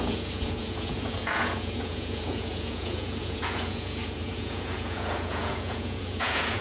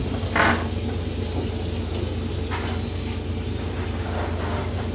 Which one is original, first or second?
second